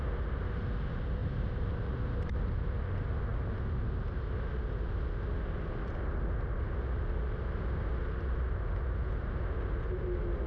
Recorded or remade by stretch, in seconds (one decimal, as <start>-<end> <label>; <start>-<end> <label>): 0.0-1.2 recorded; 1.2-2.6 remade; 2.6-10.5 recorded